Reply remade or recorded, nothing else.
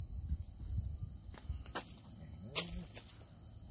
recorded